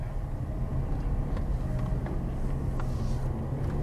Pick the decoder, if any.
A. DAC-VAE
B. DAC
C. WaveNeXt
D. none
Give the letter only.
D